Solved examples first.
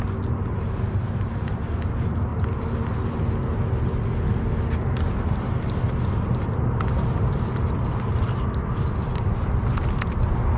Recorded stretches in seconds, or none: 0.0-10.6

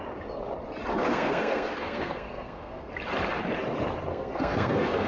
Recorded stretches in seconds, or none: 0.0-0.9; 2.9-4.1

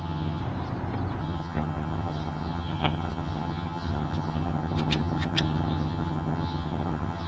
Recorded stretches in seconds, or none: 0.4-1.2

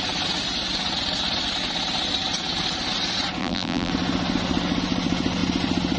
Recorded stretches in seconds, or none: 0.0-3.4; 3.9-6.0

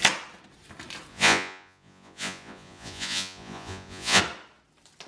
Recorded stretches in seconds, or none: 0.0-1.1; 4.2-5.1

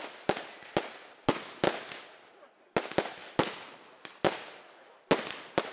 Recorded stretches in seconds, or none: 0.0-5.7

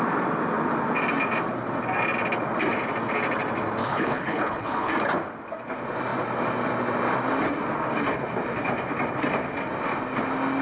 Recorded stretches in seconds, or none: 0.0-3.8; 4.9-10.6